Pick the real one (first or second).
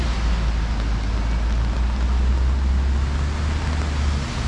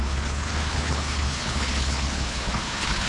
first